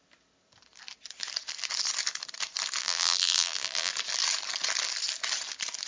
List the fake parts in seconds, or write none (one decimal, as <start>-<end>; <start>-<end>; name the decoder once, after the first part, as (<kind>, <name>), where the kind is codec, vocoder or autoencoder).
2.8-3.9 (vocoder, BigVGAN v2)